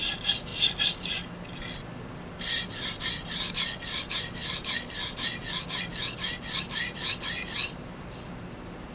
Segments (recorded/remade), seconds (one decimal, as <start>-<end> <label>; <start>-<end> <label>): 0.0-8.9 recorded